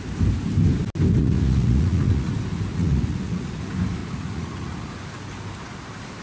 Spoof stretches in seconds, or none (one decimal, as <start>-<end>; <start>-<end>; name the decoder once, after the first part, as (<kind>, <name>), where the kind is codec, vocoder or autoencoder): 1.2-2.3 (vocoder, Vocos); 2.7-3.6; 4.0-4.9

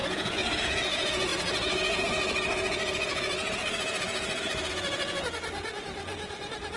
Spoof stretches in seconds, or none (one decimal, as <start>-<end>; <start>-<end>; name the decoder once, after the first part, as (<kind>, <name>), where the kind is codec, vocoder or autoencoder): 0.0-6.8 (vocoder, Vocos)